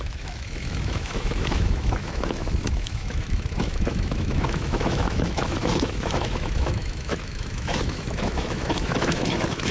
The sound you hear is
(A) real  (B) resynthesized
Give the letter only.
B